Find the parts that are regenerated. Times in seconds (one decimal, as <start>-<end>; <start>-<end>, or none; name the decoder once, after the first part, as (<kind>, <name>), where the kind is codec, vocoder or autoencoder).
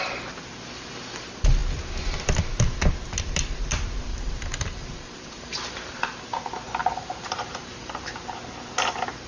4.1-6.2 (vocoder, BigVGAN v2); 6.8-8.2